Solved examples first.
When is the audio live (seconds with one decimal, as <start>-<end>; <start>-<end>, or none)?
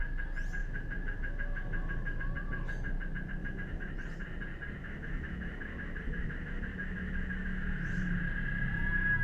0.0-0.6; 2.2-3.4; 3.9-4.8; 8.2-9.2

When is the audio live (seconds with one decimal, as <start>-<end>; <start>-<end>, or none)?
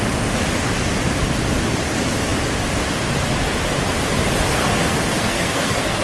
0.0-4.5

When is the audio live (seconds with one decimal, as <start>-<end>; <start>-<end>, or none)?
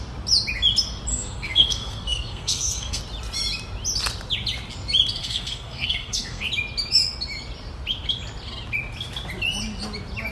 0.0-1.1; 3.0-5.2; 6.5-10.3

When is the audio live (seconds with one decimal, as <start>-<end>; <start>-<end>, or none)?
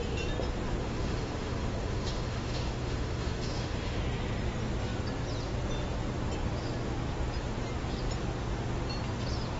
0.0-0.8; 4.0-9.6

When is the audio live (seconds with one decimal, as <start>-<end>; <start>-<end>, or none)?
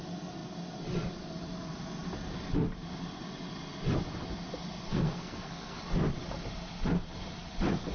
0.0-4.9; 5.8-7.9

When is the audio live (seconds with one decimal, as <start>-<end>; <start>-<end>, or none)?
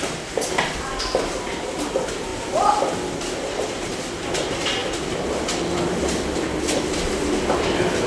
0.0-8.1